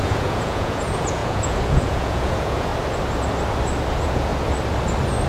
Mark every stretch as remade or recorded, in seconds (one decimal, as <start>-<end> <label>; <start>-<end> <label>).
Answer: 0.0-2.7 remade; 2.7-3.9 recorded; 3.9-4.3 remade; 4.3-5.3 recorded